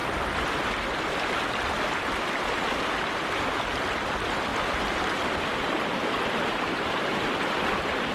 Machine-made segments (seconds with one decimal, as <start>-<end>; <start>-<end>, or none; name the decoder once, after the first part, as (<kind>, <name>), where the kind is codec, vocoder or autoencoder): 0.0-0.5 (vocoder, BigVGAN v2); 4.5-5.7